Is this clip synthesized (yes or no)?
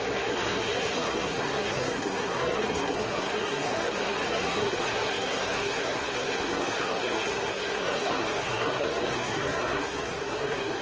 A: yes